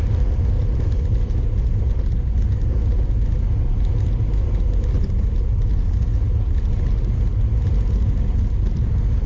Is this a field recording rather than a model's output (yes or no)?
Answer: yes